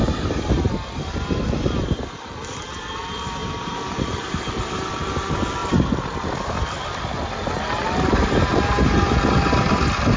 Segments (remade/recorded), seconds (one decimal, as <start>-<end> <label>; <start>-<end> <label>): 0.0-10.2 recorded